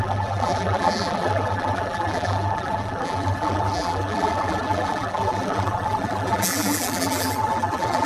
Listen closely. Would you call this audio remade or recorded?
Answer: remade